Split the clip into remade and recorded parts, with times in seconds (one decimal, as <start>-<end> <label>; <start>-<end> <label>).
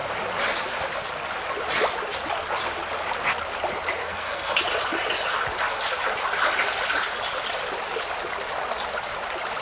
0.0-4.0 recorded; 4.0-4.6 remade; 4.6-9.6 recorded